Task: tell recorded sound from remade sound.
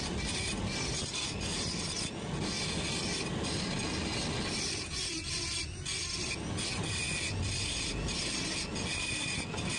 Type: recorded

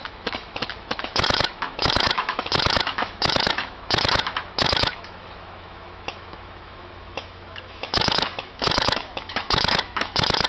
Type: remade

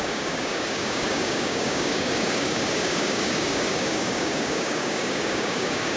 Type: remade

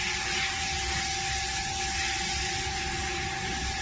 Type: recorded